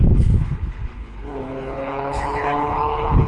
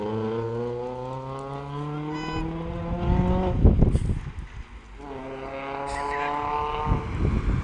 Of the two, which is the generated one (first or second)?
first